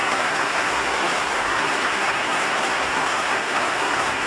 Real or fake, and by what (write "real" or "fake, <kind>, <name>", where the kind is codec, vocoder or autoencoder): fake, codec, SNAC